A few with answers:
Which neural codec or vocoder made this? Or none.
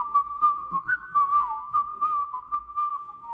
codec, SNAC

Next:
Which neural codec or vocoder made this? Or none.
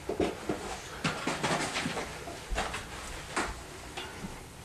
none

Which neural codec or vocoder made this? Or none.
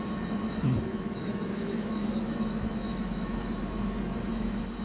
autoencoder, DAC-VAE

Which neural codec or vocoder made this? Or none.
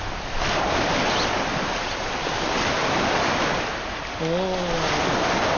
none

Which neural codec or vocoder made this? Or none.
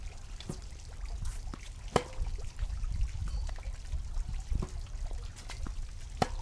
none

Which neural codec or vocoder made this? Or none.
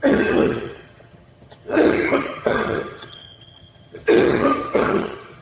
vocoder, HiFi-GAN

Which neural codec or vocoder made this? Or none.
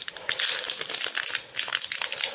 none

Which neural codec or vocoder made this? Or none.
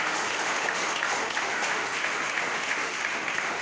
autoencoder, DAC-VAE